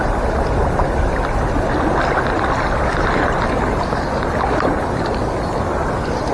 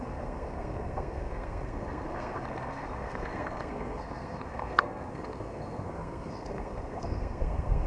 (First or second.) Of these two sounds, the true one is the first